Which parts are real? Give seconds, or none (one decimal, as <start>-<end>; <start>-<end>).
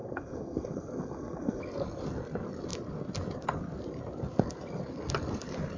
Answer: 1.6-5.8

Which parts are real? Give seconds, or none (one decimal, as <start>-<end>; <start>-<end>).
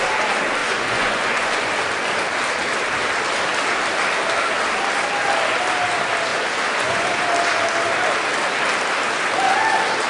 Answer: 0.0-0.6; 1.7-6.3; 7.2-10.1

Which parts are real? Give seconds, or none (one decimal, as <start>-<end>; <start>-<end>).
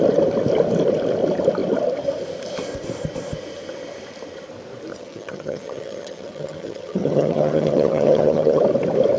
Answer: 0.0-4.9; 8.6-9.2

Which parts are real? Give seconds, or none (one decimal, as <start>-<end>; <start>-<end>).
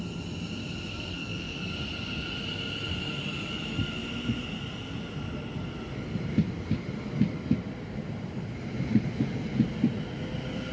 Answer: 0.0-1.1; 1.7-10.7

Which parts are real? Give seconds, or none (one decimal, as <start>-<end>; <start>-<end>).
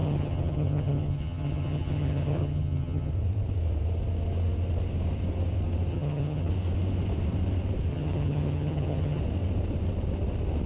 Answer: 3.1-5.9; 6.5-7.9; 9.2-10.7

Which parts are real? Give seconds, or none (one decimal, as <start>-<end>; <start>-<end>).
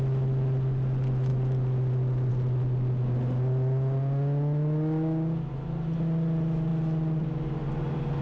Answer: 0.0-8.2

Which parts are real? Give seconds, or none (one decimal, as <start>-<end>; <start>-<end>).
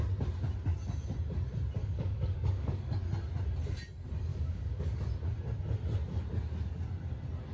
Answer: 0.0-1.8; 3.0-4.3; 5.0-7.5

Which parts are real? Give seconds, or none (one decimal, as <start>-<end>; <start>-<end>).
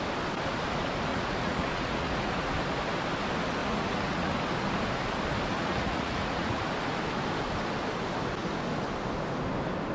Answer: 0.0-1.1; 2.5-3.6; 4.3-5.5; 6.6-9.9